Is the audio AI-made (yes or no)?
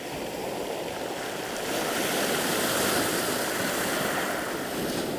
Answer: no